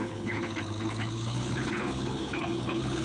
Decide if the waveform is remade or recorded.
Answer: remade